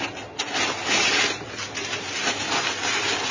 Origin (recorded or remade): recorded